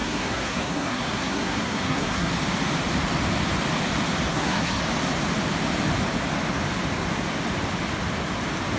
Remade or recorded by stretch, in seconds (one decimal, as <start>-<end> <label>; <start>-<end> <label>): 0.0-2.3 remade; 2.3-4.3 recorded; 4.3-4.8 remade; 4.8-8.8 recorded